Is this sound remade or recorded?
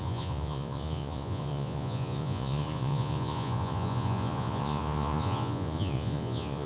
remade